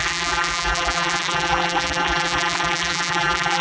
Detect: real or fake fake